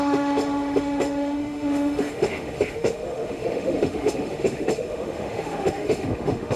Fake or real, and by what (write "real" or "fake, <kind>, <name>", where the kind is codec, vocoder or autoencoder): fake, autoencoder, DAC-VAE